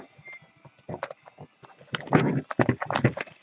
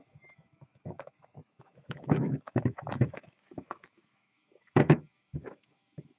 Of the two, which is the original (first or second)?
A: first